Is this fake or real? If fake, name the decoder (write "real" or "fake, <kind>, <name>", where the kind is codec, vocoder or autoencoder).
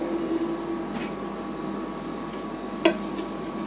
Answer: real